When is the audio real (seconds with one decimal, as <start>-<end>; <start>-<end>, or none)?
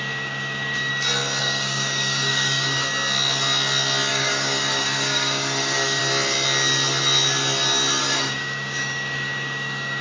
0.9-1.4; 2.9-4.1; 6.0-8.0